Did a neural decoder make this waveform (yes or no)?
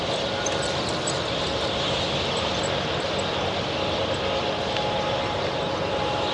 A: no